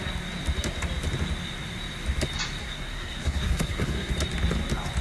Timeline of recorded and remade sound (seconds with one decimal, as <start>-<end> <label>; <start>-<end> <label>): 0.0-2.6 recorded; 2.6-4.1 remade; 4.1-5.0 recorded